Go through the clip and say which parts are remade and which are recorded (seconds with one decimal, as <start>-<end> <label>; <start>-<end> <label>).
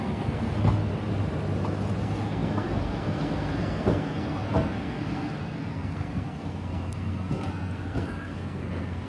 0.0-0.9 remade; 0.9-2.0 recorded; 2.0-9.1 remade